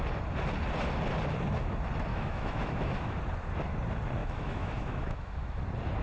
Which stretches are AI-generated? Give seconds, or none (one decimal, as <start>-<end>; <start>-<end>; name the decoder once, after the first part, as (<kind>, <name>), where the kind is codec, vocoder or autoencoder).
2.1-3.2 (autoencoder, DAC-VAE); 4.2-5.6

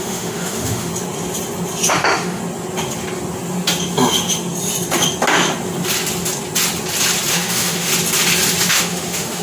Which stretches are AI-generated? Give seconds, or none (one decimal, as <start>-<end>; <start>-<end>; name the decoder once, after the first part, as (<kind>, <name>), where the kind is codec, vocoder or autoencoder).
0.0-0.9 (autoencoder, DAC-VAE); 1.9-2.4; 7.3-7.9; 8.7-9.4

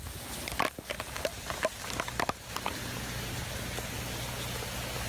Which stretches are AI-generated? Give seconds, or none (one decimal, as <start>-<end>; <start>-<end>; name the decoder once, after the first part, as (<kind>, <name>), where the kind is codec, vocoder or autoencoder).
none

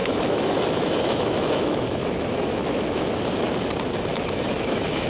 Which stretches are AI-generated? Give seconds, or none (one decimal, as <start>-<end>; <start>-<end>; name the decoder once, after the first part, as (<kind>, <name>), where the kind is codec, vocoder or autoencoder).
0.0-3.1 (autoencoder, DAC-VAE); 4.1-5.1

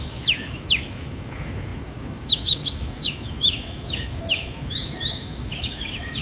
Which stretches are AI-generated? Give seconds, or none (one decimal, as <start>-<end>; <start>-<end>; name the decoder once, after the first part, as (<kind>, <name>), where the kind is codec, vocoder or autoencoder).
0.0-6.2 (autoencoder, DAC-VAE)